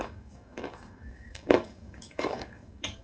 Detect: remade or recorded remade